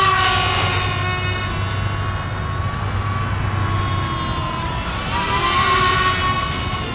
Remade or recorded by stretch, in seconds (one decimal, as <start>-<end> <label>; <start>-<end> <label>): 0.0-4.4 recorded; 4.4-6.0 remade; 6.0-6.9 recorded